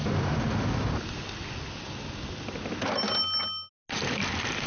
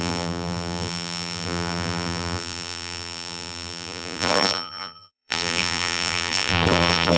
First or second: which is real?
first